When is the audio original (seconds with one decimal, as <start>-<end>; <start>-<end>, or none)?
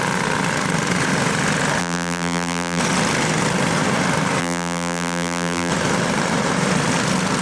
0.0-1.8; 2.8-4.4; 5.7-7.4